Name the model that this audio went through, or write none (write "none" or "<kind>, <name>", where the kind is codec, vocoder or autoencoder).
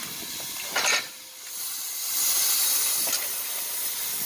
none